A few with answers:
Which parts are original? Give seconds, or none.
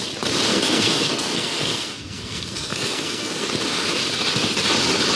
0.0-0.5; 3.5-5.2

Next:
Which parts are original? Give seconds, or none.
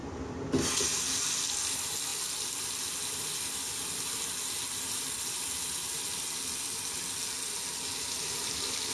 0.0-8.9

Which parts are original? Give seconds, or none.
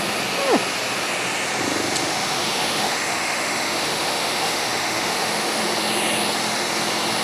0.0-2.0; 5.6-7.2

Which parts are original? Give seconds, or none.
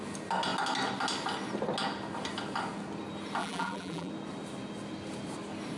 0.0-3.4; 4.1-5.8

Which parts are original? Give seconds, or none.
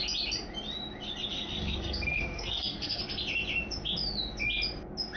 0.0-1.3; 3.0-5.2